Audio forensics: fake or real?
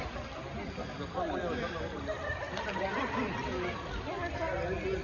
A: real